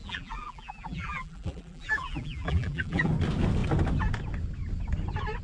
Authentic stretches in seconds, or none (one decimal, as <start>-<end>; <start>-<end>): 3.1-5.4